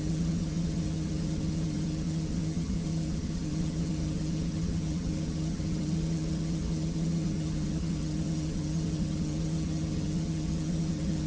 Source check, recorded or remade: remade